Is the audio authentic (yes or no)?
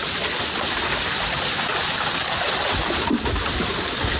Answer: yes